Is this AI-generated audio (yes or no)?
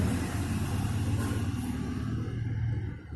no